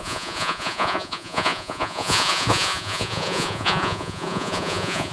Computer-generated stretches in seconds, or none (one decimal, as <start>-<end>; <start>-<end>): 0.0-5.1